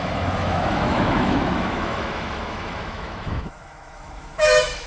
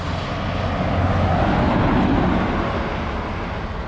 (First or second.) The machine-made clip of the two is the first